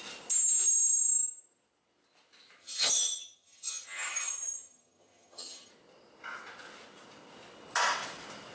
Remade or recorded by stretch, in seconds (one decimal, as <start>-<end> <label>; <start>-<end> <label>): 0.0-2.6 recorded; 2.6-5.7 remade; 5.7-8.5 recorded